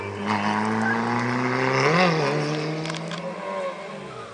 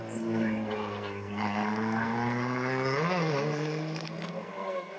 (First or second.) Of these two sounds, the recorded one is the first